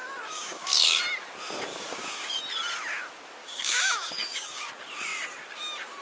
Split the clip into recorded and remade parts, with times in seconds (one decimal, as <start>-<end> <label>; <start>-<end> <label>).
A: 0.0-1.0 remade; 1.0-1.7 recorded; 1.7-2.4 remade; 2.4-3.4 recorded; 3.4-4.6 remade; 4.6-6.0 recorded